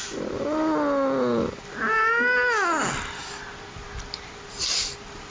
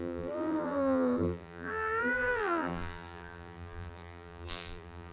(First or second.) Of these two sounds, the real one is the first